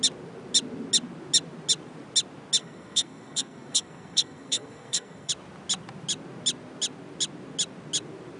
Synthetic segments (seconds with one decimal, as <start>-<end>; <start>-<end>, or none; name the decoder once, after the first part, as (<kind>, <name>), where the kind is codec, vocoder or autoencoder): 2.6-5.3 (codec, SNAC)